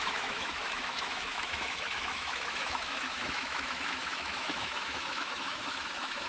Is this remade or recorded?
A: remade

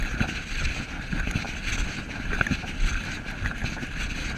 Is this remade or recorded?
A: recorded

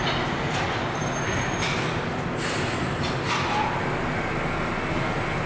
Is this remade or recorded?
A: recorded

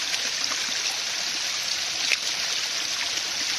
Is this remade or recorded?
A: recorded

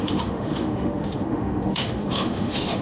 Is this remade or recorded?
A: remade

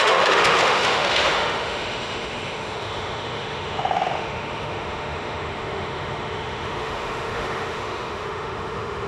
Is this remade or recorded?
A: remade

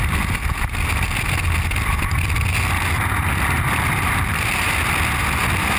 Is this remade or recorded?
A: recorded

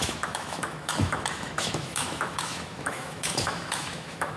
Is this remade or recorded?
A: remade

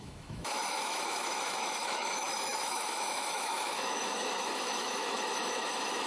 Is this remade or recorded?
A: remade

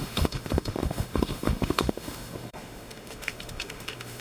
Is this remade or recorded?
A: remade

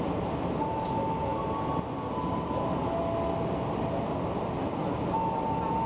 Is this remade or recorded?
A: recorded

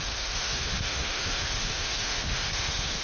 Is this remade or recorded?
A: remade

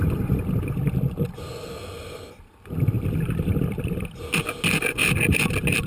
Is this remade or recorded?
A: recorded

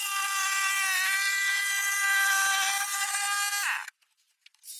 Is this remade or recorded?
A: recorded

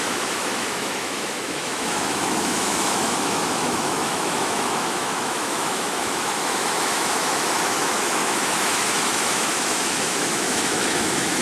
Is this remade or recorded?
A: remade